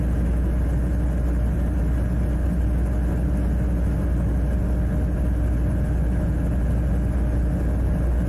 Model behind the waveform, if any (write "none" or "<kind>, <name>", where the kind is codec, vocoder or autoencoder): none